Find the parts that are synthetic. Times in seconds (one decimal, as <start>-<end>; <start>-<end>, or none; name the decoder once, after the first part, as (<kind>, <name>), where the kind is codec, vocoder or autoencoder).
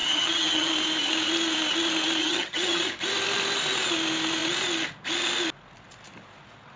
0.0-0.7 (vocoder, HiFi-GAN); 2.2-2.8